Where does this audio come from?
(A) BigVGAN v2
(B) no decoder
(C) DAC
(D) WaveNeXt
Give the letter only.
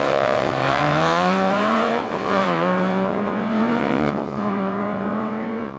D